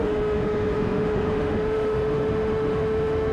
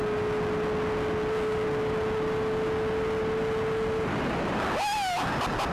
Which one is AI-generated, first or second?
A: first